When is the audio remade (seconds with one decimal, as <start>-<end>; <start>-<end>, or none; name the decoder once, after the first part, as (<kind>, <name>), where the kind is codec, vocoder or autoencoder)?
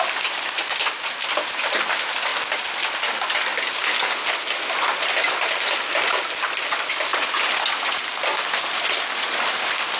none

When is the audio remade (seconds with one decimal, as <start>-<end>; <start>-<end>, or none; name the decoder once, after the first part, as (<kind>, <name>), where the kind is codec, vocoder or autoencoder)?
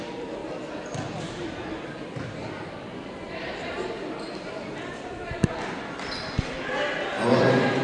none